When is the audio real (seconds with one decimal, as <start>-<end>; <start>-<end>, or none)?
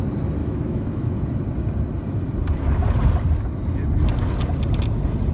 0.0-0.4; 1.1-5.3